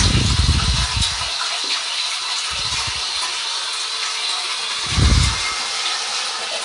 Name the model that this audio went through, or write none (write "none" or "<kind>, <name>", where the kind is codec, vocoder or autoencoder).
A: none